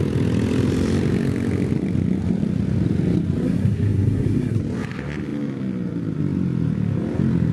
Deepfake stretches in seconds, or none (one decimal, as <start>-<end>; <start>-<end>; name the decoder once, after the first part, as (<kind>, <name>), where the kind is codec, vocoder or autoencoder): 3.4-4.6 (codec, SNAC)